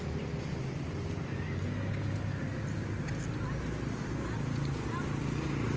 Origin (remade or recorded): recorded